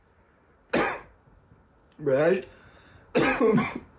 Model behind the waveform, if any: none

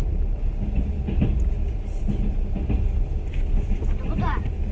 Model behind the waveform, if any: none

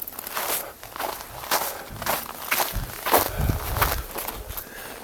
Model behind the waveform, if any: none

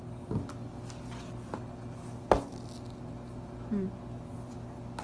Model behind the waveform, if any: none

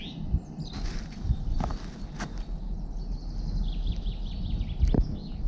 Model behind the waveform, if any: none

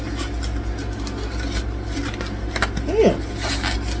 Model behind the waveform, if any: none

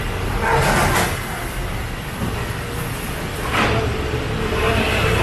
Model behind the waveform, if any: none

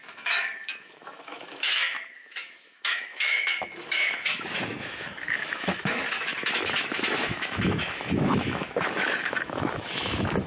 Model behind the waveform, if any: autoencoder, DAC-VAE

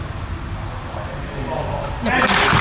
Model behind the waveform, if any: none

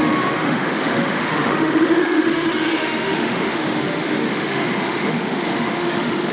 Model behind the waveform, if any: autoencoder, DAC-VAE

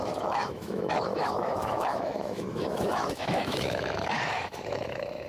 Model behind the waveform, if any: autoencoder, DAC-VAE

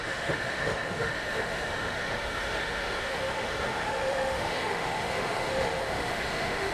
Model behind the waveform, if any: autoencoder, DAC-VAE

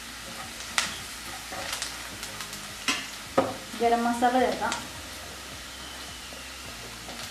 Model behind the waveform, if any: none